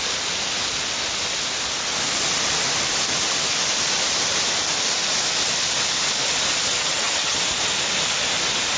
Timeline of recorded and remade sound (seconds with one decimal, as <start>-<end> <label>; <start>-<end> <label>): 0.0-6.8 recorded; 6.8-7.4 remade; 7.4-8.8 recorded